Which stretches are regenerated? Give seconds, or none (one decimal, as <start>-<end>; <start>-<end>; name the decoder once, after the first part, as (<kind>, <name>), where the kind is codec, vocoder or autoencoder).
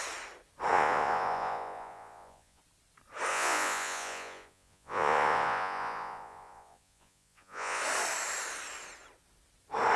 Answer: 0.7-2.6 (vocoder, Vocos); 3.3-7.8